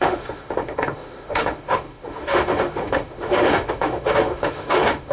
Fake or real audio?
fake